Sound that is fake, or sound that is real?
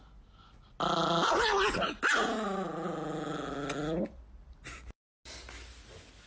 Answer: real